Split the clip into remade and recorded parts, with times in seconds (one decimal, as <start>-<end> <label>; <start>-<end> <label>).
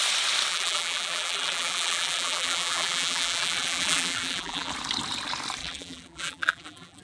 0.0-0.5 recorded; 0.5-4.7 remade; 4.7-5.6 recorded; 5.6-7.0 remade